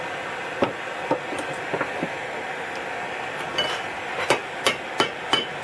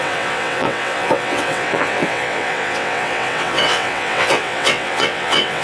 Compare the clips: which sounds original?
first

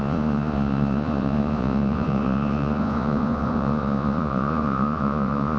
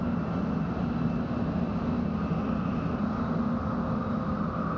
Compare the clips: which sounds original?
second